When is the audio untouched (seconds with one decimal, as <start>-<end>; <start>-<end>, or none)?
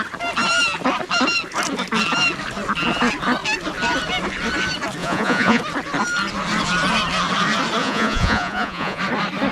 0.0-5.0; 5.6-7.8; 9.0-9.5